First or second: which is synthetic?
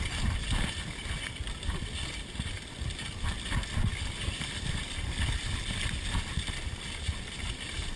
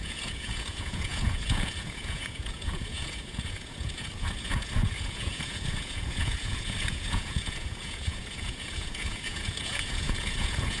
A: second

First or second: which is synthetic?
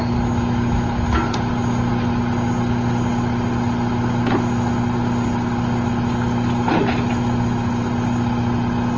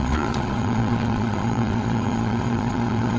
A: second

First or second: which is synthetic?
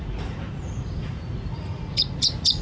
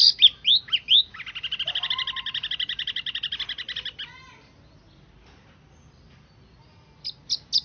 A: first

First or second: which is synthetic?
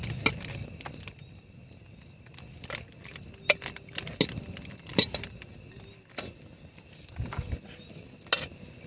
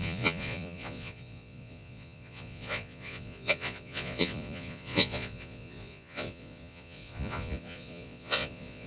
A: second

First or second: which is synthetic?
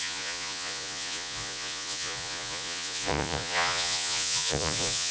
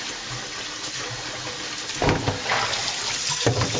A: first